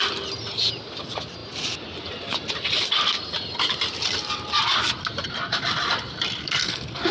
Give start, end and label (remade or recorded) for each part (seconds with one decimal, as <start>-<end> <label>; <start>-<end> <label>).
0.0-6.4 recorded; 6.4-7.1 remade